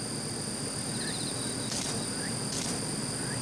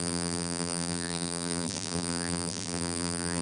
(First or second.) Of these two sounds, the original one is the first